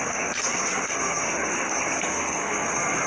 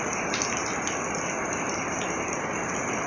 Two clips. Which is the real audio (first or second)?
second